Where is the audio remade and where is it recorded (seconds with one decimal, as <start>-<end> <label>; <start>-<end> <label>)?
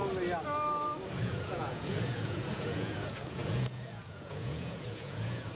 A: 0.0-1.2 recorded; 1.2-5.6 remade